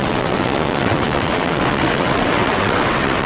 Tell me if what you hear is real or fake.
fake